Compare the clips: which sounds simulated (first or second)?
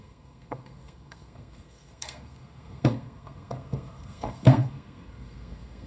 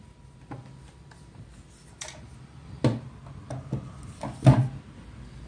first